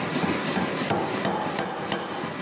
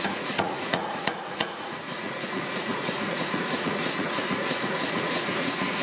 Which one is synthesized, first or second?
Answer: second